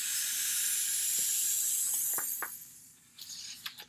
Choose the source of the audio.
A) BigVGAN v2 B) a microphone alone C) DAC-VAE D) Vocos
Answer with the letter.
B